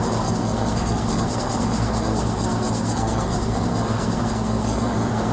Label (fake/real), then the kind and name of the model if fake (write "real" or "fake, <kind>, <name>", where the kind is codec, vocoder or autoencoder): fake, codec, SNAC